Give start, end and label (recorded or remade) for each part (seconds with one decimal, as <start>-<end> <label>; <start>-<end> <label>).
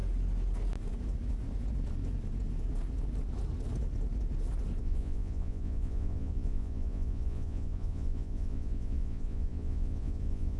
0.0-4.8 recorded; 4.8-10.6 remade